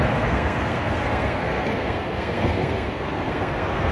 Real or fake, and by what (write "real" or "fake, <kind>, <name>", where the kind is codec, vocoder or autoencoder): fake, codec, SNAC